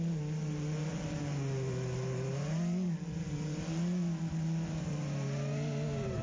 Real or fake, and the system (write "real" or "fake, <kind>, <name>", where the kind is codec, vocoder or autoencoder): real